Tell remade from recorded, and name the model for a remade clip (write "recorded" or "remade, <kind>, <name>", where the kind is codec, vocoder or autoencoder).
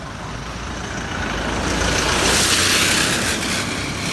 recorded